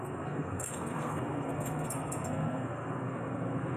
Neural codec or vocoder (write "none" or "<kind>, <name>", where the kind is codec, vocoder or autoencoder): codec, SNAC